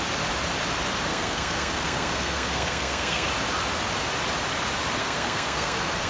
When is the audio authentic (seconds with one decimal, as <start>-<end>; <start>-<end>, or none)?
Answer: 0.0-1.1; 3.3-5.0